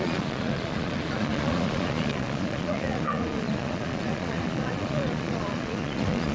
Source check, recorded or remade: remade